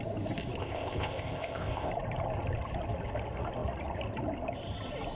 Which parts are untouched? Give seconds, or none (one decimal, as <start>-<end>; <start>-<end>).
0.0-0.6; 1.9-5.1